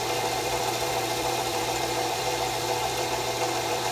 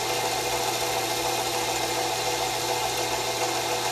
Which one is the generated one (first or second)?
first